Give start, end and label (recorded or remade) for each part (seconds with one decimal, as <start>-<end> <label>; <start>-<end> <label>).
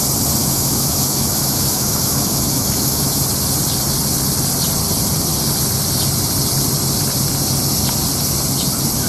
0.0-0.4 recorded; 0.4-3.2 remade; 3.2-9.1 recorded